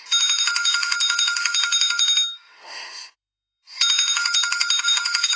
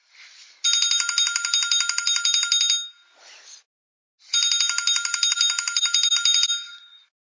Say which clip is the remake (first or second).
first